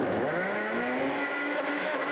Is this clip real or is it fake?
fake